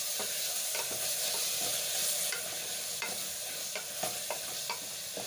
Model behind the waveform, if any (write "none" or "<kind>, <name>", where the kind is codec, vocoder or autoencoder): none